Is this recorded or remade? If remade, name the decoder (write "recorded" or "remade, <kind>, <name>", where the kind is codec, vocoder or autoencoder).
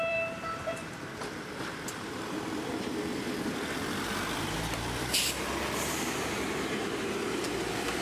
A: remade, vocoder, BigVGAN v2